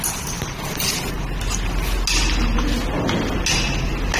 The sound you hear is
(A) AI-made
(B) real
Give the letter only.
B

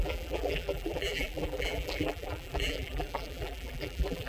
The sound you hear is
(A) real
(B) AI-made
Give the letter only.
B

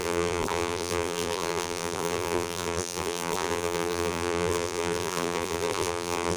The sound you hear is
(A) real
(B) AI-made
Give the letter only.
B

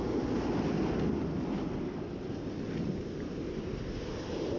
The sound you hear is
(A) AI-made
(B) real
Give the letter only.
B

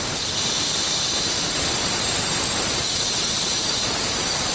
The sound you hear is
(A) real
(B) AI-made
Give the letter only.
B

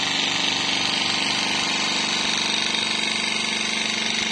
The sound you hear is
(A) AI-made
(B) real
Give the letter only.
B